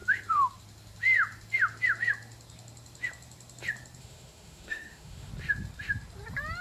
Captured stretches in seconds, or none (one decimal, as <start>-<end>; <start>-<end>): 0.0-4.0; 5.3-6.6